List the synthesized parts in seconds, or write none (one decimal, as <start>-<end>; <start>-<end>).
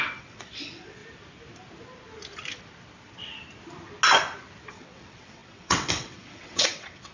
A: 0.0-1.0; 4.7-7.1